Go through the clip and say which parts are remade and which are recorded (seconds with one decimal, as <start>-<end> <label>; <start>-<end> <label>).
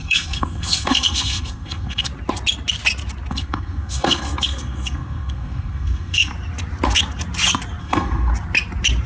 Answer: 0.0-2.1 remade; 2.1-3.3 recorded; 3.3-6.3 remade; 6.3-7.8 recorded; 7.8-8.3 remade; 8.3-9.1 recorded